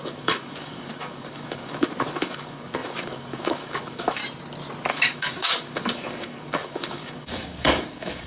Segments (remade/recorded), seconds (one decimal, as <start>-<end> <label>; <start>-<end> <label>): 0.0-4.2 remade; 4.2-4.9 recorded; 4.9-8.3 remade